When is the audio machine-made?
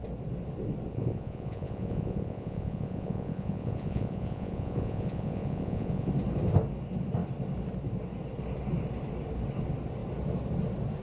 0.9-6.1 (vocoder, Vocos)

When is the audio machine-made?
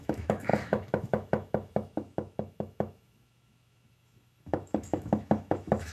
0.0-5.9 (autoencoder, DAC-VAE)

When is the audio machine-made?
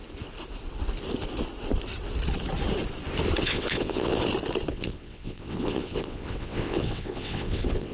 3.4-4.2 (vocoder, WaveNeXt); 4.7-7.9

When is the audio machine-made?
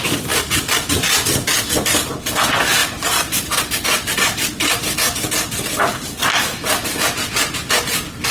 2.8-3.6 (vocoder, BigVGAN v2)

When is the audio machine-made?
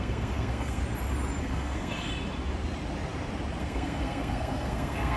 0.0-0.8 (codec, SNAC); 1.4-2.1; 3.6-5.2